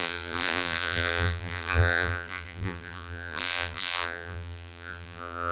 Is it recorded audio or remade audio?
remade